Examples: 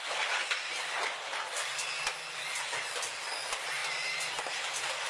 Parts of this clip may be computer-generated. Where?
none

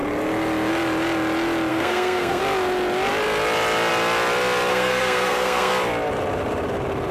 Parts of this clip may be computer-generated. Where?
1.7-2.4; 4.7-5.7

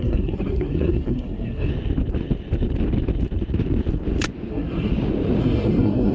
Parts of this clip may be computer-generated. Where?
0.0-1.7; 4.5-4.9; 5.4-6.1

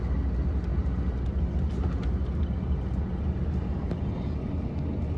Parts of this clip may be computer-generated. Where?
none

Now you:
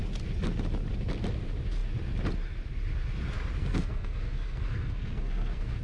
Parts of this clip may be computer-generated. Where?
3.6-5.8

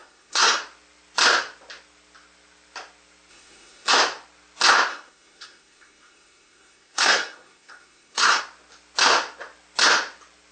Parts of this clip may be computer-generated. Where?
0.0-0.6; 3.3-3.9; 4.9-8.4

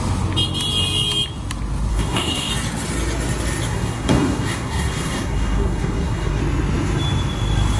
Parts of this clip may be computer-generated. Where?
1.9-2.5; 3.7-6.4

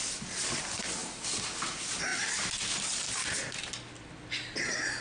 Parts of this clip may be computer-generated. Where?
none